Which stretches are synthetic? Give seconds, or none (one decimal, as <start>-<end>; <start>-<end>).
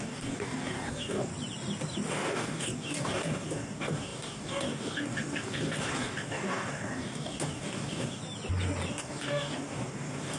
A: 0.0-1.3; 2.1-8.2; 8.9-10.4